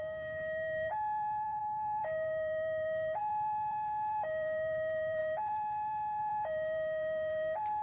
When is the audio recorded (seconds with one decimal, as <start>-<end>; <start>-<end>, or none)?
none

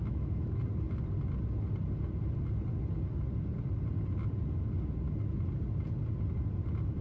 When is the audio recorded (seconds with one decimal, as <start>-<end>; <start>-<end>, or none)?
0.6-7.0

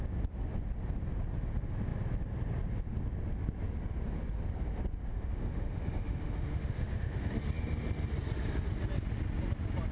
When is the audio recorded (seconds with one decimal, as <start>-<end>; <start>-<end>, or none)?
0.0-5.1; 7.3-9.9

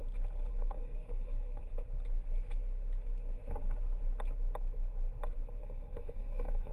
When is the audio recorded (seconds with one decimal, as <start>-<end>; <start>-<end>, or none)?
0.0-0.5; 1.6-5.6

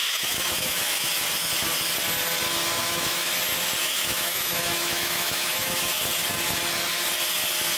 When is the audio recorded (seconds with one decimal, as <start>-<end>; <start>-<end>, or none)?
1.1-2.8; 3.3-3.8; 6.0-7.8